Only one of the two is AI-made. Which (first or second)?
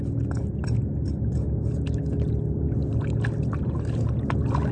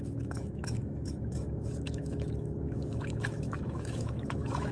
second